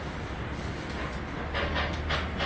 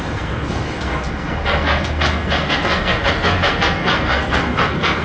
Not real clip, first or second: second